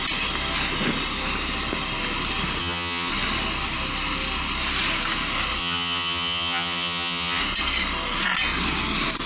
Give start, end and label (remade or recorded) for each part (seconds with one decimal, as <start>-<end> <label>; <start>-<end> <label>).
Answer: 0.0-2.6 recorded; 2.6-3.1 remade; 3.1-5.6 recorded; 5.6-7.4 remade; 7.4-9.3 recorded